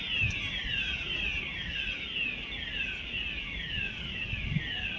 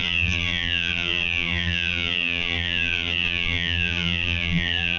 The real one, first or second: first